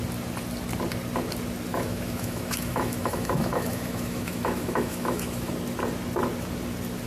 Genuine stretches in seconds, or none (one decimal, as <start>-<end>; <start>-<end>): 0.0-1.7; 5.5-7.1